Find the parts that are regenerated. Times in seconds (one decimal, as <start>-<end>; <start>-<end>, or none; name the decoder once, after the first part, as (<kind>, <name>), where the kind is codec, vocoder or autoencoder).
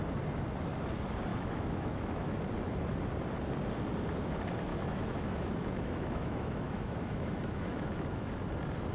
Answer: 1.3-2.4 (autoencoder, DAC-VAE); 4.7-8.3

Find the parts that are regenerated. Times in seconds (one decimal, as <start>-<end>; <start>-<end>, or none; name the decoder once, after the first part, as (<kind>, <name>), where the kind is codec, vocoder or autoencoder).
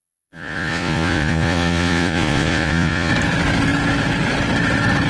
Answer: 0.0-3.1 (vocoder, Vocos)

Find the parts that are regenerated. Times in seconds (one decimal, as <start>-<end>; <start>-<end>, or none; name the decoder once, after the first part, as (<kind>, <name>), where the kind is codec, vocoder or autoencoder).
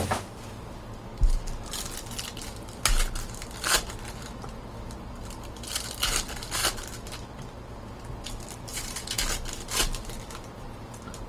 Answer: 8.7-9.2 (vocoder, Vocos)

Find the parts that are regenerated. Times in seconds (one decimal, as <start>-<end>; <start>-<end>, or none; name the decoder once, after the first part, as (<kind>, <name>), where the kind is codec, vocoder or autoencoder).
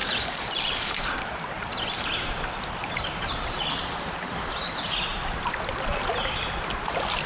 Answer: 0.0-1.2 (vocoder, BigVGAN v2); 2.8-4.3; 5.1-5.7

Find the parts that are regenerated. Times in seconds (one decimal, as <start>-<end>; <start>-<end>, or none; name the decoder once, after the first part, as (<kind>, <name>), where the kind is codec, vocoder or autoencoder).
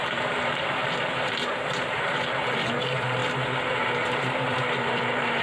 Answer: 0.0-3.2 (vocoder, BigVGAN v2); 3.7-5.4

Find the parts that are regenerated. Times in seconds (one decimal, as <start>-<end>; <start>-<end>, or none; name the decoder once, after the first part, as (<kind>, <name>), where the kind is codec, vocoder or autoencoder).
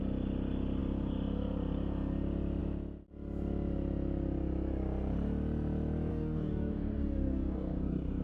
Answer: 6.1-8.2 (codec, DAC)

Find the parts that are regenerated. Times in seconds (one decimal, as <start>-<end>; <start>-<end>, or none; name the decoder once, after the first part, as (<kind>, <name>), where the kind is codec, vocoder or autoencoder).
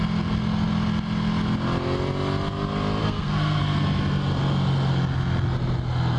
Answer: 3.0-3.6 (codec, SNAC)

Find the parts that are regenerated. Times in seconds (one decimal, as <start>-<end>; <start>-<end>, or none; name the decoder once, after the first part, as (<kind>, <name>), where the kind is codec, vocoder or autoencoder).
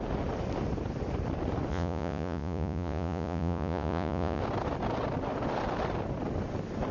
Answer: 1.7-4.4 (vocoder, Vocos)